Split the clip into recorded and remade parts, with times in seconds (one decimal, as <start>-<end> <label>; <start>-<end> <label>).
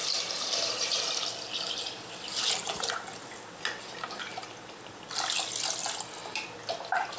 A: 0.0-2.9 remade; 2.9-4.3 recorded; 4.3-5.0 remade; 5.0-7.2 recorded